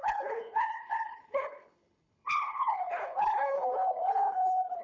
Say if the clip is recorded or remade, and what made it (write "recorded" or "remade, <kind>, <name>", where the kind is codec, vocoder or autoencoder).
remade, codec, HILCodec